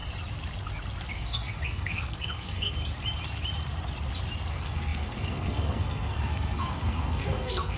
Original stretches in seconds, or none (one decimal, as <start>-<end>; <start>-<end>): 0.0-1.1; 2.8-4.5